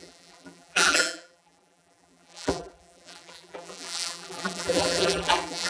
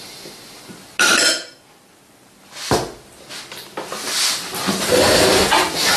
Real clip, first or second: second